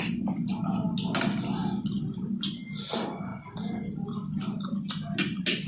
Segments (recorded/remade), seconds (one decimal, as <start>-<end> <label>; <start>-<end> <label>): 0.0-5.7 recorded